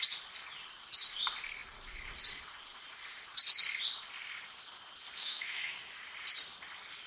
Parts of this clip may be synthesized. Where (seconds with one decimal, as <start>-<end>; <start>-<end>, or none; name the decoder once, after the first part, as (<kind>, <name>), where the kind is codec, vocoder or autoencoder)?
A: 5.2-5.9 (autoencoder, DAC-VAE)